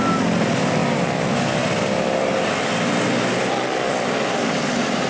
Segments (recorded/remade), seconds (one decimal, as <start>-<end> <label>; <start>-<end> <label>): 0.0-5.1 recorded